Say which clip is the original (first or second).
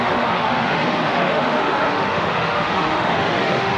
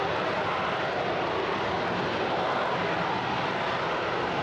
second